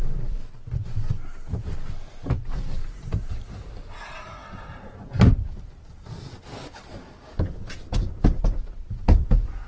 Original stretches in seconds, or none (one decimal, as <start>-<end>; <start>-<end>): 0.4-2.5; 4.9-9.7